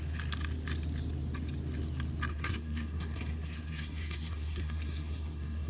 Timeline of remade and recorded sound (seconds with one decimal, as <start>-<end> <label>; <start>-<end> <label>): 0.0-2.3 recorded; 2.3-5.7 remade